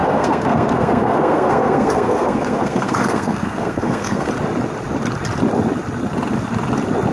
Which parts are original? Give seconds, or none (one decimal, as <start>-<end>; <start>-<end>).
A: 4.3-7.1